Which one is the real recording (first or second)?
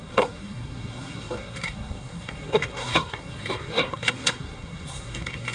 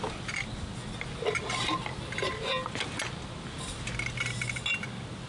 second